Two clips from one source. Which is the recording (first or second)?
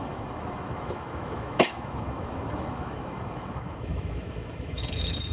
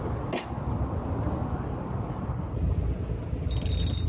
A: second